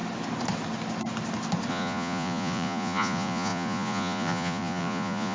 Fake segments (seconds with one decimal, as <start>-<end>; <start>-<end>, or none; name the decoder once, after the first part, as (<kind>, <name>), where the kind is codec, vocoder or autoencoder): 1.7-5.3 (vocoder, Vocos)